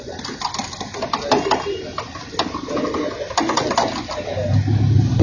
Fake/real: real